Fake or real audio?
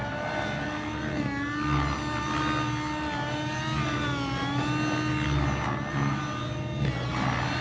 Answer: real